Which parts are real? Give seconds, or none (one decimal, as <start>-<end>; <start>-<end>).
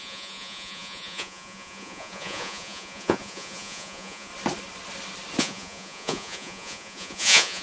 4.3-5.4